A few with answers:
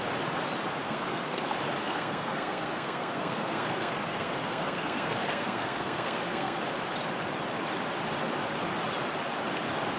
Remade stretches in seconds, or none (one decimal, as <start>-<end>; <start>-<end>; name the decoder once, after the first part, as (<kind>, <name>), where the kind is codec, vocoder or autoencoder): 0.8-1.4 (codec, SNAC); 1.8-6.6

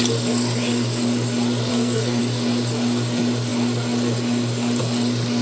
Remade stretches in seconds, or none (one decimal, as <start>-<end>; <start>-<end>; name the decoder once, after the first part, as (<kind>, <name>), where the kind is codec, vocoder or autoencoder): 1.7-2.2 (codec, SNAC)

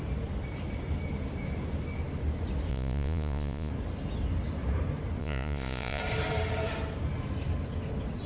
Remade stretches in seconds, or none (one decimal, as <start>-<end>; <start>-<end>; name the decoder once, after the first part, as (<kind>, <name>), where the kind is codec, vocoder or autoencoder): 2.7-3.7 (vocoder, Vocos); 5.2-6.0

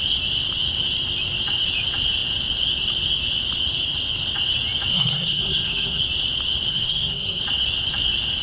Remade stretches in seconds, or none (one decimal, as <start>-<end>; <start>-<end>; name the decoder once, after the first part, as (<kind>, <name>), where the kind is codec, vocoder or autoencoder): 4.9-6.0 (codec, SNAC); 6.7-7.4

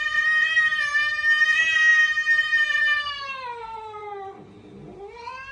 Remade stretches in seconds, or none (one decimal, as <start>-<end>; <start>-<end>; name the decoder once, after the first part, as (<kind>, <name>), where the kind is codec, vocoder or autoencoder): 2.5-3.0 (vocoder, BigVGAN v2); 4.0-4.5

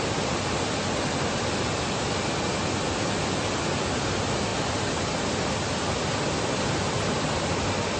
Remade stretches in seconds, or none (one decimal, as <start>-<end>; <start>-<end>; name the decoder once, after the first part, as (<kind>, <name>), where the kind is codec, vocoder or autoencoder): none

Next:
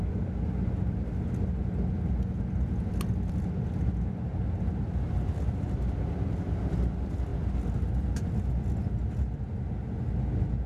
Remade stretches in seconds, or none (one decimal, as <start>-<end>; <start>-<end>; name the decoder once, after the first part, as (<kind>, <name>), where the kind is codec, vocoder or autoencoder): none